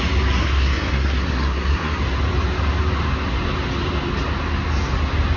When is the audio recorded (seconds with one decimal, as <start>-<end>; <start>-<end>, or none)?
0.0-0.4; 2.0-5.4